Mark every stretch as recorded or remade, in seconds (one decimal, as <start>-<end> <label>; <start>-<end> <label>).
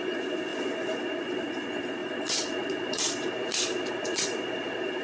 0.0-5.0 remade